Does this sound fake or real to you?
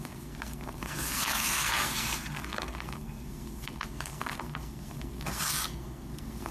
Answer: fake